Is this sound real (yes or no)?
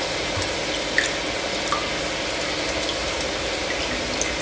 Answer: yes